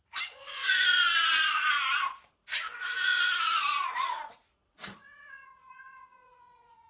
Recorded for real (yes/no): no